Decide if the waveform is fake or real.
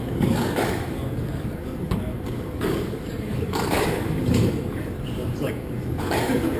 fake